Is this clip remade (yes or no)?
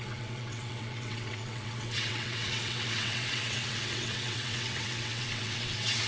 yes